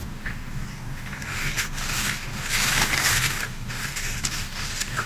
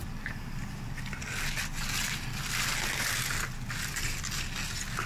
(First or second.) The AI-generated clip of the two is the first